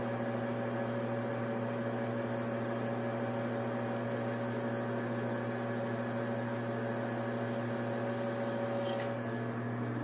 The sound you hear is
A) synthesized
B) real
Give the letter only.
B